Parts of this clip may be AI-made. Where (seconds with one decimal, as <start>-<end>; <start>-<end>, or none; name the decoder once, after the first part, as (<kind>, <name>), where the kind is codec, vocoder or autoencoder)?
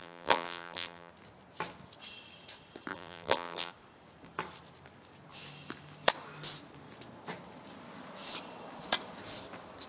0.0-1.1 (vocoder, BigVGAN v2); 2.9-3.7